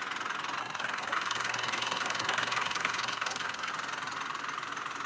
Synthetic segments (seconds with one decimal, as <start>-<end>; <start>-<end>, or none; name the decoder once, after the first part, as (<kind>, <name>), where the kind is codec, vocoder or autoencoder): 0.6-3.7 (codec, SNAC)